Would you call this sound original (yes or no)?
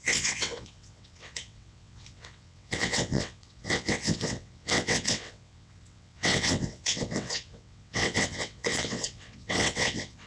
no